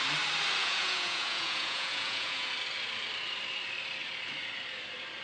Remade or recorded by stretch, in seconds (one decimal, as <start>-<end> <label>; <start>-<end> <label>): 0.0-0.6 recorded; 0.6-2.5 remade; 2.5-5.2 recorded